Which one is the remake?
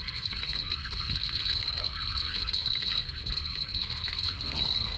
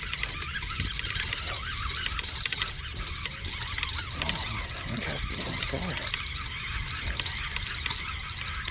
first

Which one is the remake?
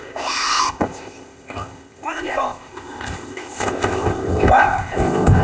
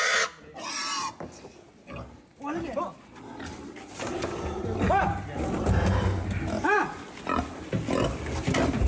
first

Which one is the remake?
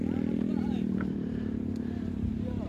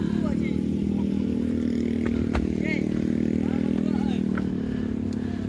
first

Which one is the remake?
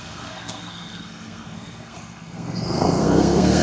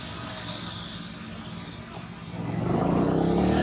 first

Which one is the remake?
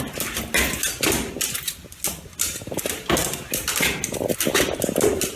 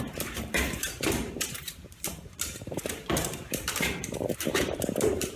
second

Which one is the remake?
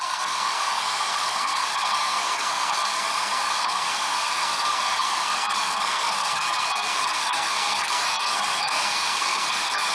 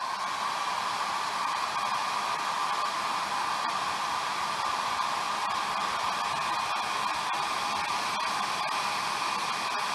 first